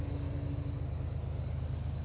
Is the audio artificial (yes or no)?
no